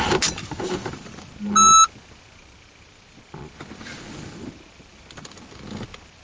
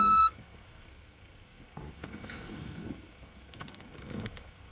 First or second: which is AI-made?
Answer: second